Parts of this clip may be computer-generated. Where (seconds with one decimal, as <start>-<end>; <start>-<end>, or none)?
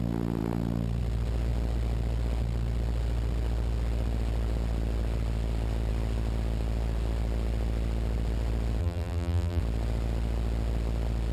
8.8-9.6